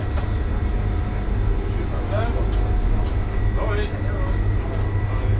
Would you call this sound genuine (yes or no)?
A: yes